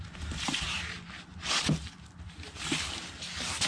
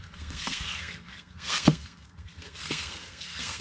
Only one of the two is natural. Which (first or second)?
first